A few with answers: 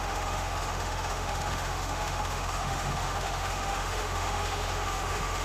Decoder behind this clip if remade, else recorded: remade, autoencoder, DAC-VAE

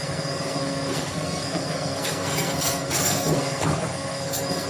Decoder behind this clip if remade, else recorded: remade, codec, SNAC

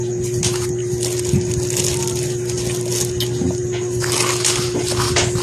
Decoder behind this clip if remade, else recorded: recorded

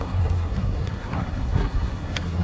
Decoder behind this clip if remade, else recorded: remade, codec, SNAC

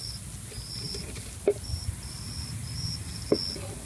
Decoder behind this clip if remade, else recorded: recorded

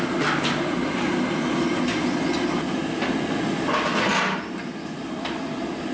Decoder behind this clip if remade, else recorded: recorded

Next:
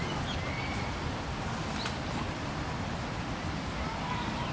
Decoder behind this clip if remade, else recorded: recorded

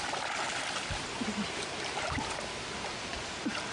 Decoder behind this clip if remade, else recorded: recorded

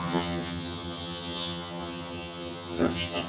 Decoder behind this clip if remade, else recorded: remade, vocoder, HiFi-GAN